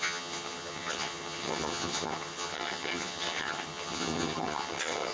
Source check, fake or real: fake